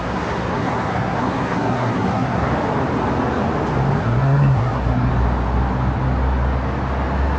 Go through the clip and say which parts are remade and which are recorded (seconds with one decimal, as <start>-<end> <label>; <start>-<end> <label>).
0.0-2.5 remade; 2.5-4.0 recorded; 4.0-5.1 remade; 5.1-7.4 recorded